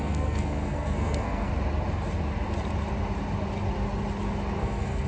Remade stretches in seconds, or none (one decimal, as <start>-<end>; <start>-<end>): 0.0-1.5; 4.6-5.1